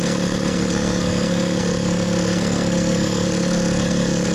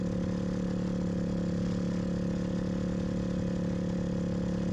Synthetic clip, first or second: first